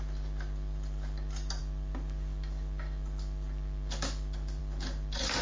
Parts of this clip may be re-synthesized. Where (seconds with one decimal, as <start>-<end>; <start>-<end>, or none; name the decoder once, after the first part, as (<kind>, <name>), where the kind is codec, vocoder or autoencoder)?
none